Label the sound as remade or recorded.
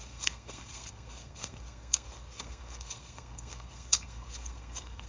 remade